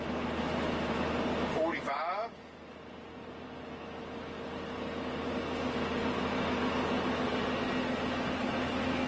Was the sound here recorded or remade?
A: recorded